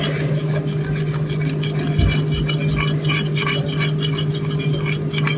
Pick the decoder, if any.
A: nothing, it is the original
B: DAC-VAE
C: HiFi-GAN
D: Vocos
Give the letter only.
A